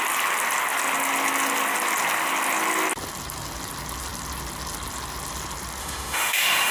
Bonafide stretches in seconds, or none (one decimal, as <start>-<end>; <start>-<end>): 0.0-5.8